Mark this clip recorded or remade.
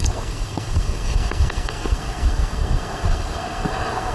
remade